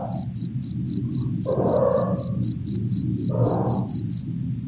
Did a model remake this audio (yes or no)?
no